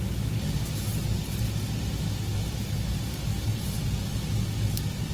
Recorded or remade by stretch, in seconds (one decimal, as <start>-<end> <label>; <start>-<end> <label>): 0.0-5.1 recorded